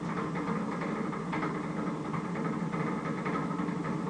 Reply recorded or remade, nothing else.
recorded